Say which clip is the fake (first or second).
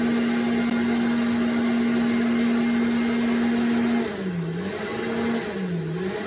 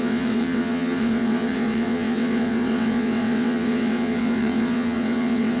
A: second